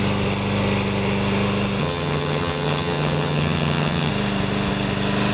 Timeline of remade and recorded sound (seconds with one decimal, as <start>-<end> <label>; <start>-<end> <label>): 0.0-1.8 recorded; 1.8-4.1 remade; 4.1-5.3 recorded